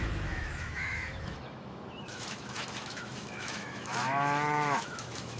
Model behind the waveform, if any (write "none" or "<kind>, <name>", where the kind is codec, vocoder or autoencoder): autoencoder, DAC-VAE